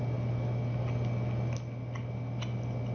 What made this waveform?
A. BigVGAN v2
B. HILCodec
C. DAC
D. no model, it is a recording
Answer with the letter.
D